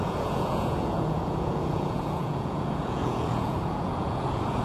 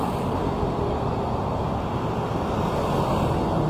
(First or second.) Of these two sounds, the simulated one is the first